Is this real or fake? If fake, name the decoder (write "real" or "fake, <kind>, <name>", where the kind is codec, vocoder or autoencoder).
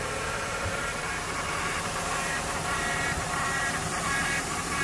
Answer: fake, vocoder, BigVGAN v2